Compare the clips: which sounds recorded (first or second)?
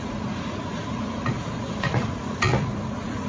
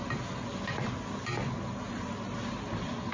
second